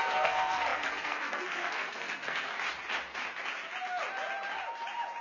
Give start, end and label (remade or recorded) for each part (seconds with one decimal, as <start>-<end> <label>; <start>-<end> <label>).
0.0-2.5 remade; 2.5-5.2 recorded